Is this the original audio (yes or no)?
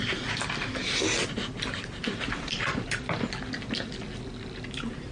yes